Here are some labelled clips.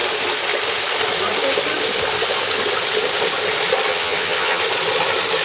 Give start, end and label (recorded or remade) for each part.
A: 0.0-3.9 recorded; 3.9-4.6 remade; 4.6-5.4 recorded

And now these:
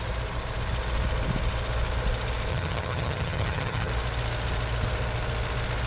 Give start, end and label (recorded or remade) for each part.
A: 0.0-2.5 recorded; 2.5-3.9 remade; 3.9-5.9 recorded